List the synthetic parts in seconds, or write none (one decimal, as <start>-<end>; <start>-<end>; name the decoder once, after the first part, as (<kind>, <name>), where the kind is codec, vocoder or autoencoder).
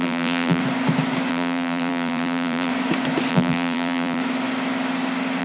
0.0-0.6 (vocoder, BigVGAN v2); 1.3-2.7; 3.3-4.2